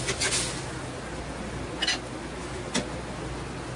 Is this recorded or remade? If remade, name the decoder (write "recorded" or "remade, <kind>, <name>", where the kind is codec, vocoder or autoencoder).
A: recorded